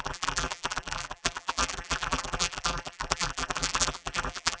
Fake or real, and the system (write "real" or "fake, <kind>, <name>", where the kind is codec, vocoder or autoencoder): fake, vocoder, BigVGAN v2